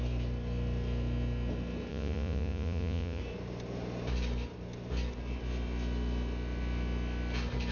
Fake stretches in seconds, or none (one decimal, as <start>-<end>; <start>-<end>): 1.9-3.2